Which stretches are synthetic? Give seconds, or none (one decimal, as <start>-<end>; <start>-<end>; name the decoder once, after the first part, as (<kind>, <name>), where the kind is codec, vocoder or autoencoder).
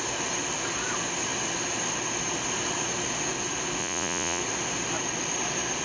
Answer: 3.8-4.4 (vocoder, Vocos)